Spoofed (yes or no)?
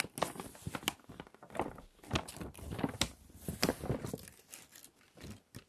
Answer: no